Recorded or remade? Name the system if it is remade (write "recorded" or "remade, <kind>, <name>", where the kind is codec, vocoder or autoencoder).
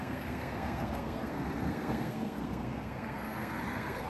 remade, codec, SNAC